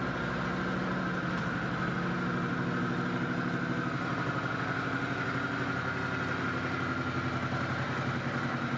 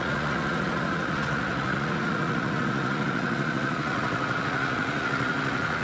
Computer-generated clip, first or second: second